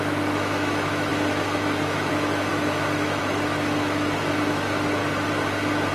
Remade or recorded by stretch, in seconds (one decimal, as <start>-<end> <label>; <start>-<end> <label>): 0.0-5.0 remade; 5.0-5.9 recorded